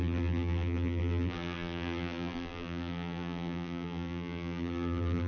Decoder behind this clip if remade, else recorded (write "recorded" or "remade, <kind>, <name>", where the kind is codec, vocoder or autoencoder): remade, vocoder, BigVGAN v2